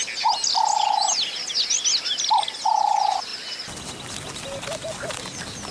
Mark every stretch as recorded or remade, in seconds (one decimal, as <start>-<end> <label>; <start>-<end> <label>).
0.0-5.7 recorded